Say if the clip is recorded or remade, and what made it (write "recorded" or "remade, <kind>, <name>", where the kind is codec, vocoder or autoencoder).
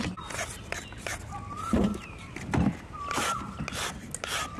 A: recorded